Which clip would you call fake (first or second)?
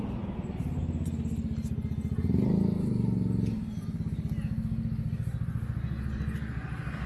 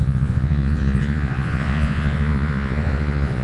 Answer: second